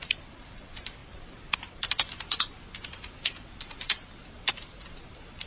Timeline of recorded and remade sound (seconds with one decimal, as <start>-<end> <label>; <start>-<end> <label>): 0.0-1.0 recorded; 1.0-4.3 remade; 4.3-5.5 recorded